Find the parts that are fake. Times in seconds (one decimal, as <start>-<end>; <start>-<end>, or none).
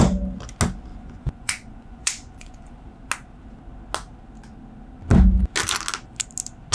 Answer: 0.9-2.8